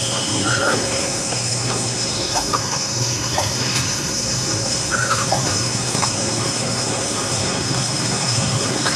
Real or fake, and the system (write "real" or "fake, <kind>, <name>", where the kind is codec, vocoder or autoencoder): fake, codec, SNAC